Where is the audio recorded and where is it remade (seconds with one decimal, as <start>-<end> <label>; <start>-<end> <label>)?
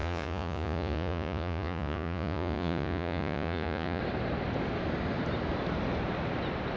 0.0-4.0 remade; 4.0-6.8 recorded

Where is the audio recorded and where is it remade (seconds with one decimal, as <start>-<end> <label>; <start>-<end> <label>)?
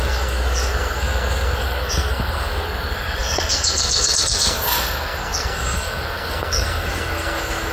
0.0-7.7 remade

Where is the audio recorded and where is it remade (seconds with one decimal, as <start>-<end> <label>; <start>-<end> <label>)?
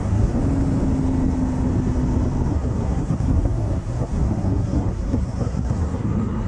0.0-0.4 remade; 0.4-2.5 recorded; 2.5-6.5 remade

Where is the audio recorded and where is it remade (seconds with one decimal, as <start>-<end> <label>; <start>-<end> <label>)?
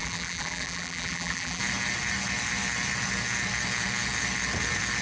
0.0-1.6 remade; 1.6-5.0 recorded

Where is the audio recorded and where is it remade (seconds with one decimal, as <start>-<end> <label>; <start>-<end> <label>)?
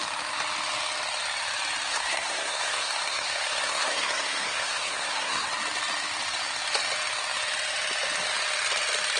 0.0-1.9 recorded; 1.9-5.5 remade; 5.5-9.2 recorded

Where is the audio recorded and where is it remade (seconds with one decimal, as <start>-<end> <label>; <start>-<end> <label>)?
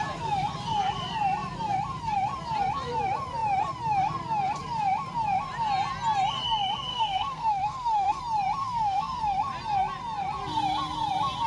0.0-6.9 recorded; 6.9-8.2 remade; 8.2-8.6 recorded; 8.6-9.2 remade; 9.2-11.5 recorded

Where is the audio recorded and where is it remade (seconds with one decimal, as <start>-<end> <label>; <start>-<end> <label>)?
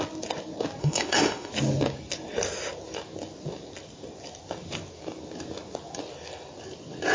0.0-0.8 recorded; 0.8-1.5 remade; 1.5-7.1 recorded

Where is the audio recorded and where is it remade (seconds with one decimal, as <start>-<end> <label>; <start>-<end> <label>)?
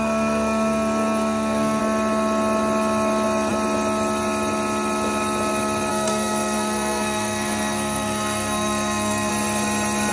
0.0-1.8 remade; 1.8-5.9 recorded; 5.9-9.3 remade; 9.3-10.1 recorded